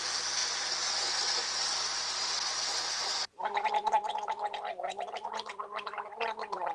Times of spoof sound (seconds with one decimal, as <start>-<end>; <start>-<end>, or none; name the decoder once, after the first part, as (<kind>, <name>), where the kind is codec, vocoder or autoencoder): none